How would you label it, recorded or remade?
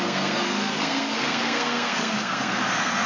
remade